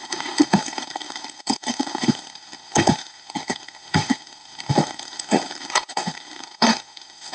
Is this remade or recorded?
remade